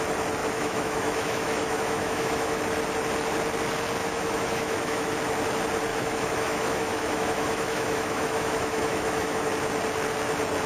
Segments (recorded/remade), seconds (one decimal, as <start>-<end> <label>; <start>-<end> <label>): 0.0-0.4 recorded; 0.4-2.6 remade; 2.6-4.0 recorded; 4.0-5.1 remade; 5.1-5.9 recorded; 5.9-9.5 remade; 9.5-10.7 recorded